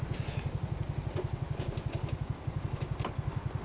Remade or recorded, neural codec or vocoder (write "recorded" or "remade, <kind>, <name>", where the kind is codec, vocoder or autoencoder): recorded